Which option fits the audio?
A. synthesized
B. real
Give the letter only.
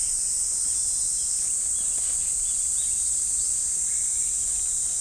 B